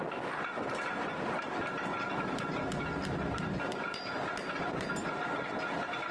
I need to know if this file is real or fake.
real